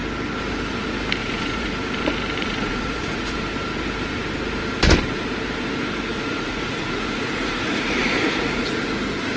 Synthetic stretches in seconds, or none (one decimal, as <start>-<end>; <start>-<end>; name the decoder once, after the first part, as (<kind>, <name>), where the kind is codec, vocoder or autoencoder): 1.2-1.7 (vocoder, Vocos); 2.4-3.4; 6.1-8.9